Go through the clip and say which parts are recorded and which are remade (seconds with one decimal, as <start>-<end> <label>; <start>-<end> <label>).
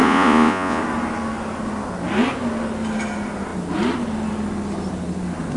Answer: 0.0-0.8 remade; 0.8-5.6 recorded